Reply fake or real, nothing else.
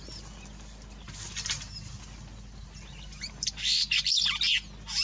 real